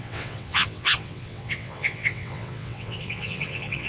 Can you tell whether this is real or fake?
fake